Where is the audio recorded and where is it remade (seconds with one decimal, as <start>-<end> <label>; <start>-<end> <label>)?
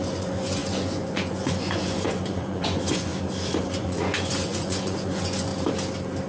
0.0-3.1 remade; 3.1-3.6 recorded; 3.6-5.5 remade; 5.5-6.3 recorded